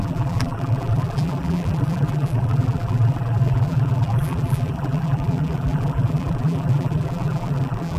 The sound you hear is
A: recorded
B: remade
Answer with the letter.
B